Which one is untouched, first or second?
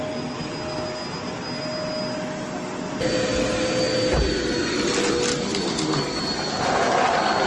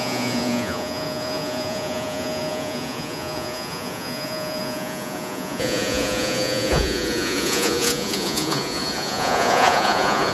first